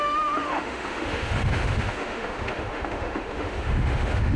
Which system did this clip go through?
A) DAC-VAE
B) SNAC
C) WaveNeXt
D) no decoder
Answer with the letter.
A